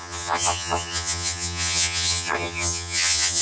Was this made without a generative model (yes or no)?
no